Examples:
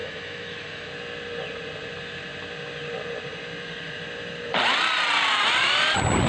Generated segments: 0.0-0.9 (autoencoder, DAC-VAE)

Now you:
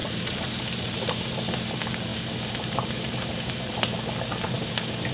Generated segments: 0.0-1.3 (vocoder, BigVGAN v2); 2.1-3.8

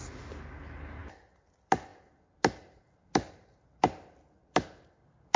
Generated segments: none

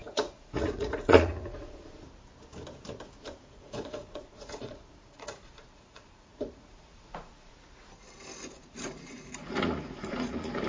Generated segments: 0.0-1.8 (vocoder, Vocos); 3.5-7.5; 8.5-10.7